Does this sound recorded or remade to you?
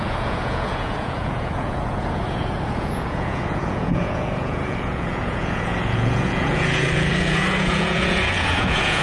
remade